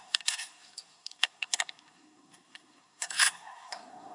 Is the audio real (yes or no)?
no